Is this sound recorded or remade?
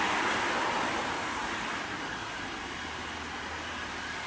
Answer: recorded